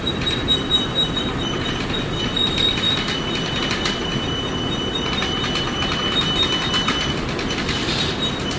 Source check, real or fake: real